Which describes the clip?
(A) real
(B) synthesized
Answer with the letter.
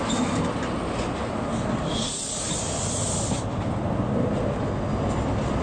A